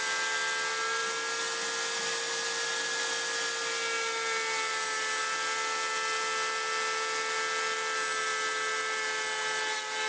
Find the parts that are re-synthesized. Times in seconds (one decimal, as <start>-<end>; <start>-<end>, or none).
none